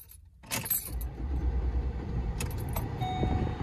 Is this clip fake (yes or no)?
no